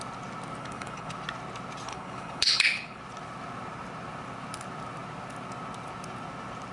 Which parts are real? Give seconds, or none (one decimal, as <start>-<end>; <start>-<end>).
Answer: 0.0-0.6; 1.1-1.9; 3.0-6.7